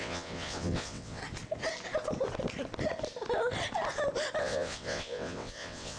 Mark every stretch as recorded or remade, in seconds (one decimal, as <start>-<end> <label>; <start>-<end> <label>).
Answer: 0.0-1.2 remade; 1.2-4.4 recorded; 4.4-6.0 remade